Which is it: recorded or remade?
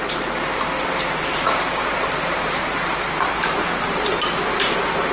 remade